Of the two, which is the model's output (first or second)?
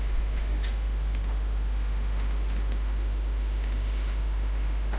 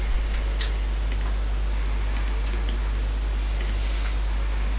first